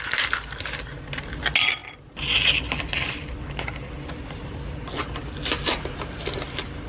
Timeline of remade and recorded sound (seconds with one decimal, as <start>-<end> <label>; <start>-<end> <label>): 0.0-6.9 recorded